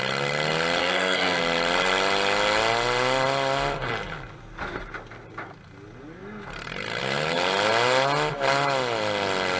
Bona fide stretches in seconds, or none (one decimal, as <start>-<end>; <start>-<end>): 0.0-0.8; 1.4-9.6